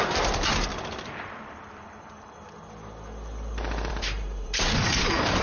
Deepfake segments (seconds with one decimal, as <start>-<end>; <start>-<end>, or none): 0.0-0.7; 3.9-5.4